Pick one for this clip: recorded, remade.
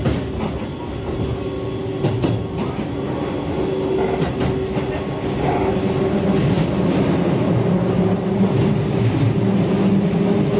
recorded